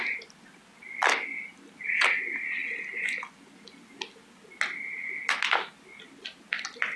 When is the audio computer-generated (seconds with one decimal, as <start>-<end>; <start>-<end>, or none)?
none